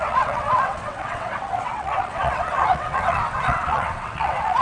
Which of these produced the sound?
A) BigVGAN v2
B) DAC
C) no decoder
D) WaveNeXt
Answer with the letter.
D